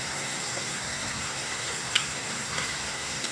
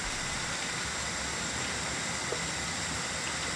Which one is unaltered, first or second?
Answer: second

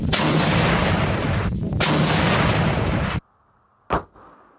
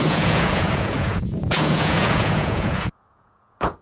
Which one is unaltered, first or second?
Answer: first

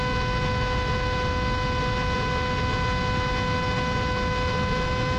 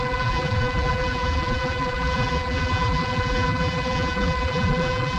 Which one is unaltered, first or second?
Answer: first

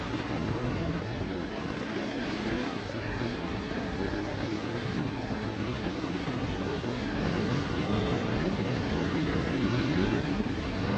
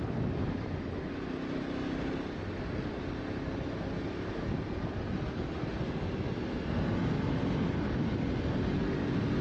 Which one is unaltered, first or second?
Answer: second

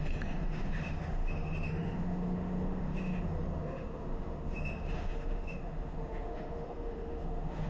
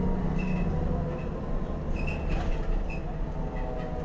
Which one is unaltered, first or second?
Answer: second